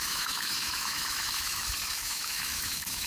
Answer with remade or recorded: remade